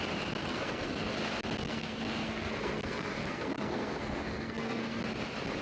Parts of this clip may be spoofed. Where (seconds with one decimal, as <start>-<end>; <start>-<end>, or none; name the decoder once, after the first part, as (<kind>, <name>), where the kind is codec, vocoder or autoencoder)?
0.4-1.1 (codec, SNAC); 1.6-5.0